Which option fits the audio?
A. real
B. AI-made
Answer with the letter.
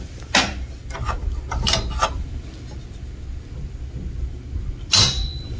A